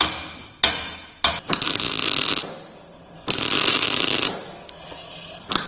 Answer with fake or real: real